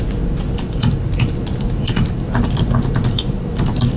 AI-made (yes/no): no